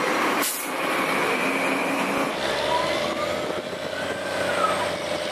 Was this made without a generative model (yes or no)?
yes